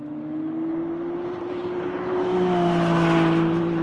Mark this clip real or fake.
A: real